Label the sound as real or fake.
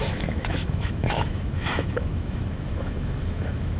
fake